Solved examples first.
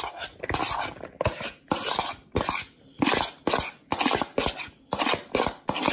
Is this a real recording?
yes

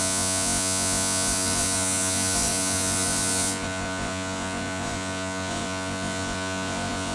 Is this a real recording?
no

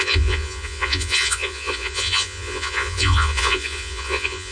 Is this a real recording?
no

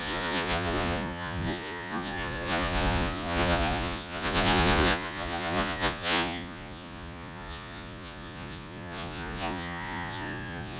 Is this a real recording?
no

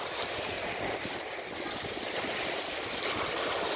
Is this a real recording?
yes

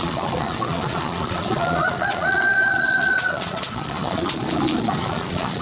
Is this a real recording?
no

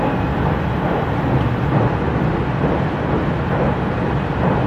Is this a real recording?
yes